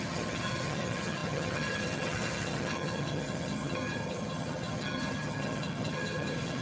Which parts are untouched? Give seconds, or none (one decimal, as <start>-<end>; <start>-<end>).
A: none